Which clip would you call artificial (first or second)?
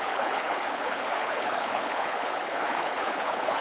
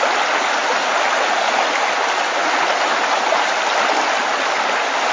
first